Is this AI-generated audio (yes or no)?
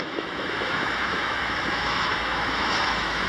yes